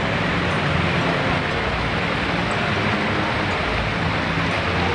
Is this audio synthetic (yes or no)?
no